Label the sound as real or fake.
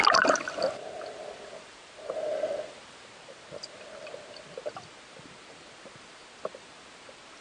real